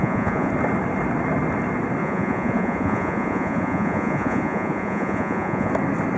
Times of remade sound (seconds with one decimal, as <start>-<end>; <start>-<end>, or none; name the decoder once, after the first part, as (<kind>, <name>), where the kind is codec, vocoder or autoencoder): 0.0-0.5 (vocoder, Vocos); 2.0-5.7